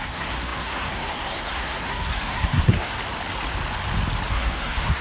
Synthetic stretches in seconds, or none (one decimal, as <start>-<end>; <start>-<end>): 0.0-2.9; 4.3-5.0